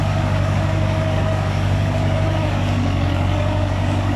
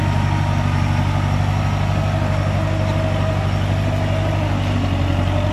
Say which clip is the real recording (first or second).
second